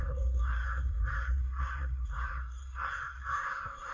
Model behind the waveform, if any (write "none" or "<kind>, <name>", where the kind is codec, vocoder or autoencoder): codec, SNAC